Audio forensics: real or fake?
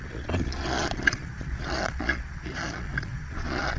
fake